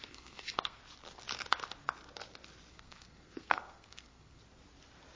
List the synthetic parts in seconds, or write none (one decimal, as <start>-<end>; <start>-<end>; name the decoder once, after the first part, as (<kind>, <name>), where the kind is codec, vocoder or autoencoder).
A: 0.0-0.8 (codec, SNAC); 2.7-4.4